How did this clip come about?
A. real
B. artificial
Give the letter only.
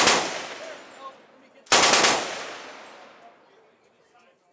A